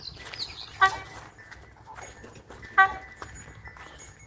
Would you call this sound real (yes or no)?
yes